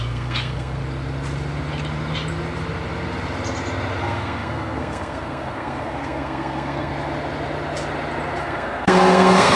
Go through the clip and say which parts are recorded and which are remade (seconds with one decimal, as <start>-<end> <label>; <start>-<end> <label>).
0.0-0.8 remade; 0.8-4.0 recorded; 4.0-6.9 remade; 6.9-8.4 recorded; 8.4-9.6 remade